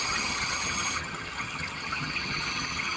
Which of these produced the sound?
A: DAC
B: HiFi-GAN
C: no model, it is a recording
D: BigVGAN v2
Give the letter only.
B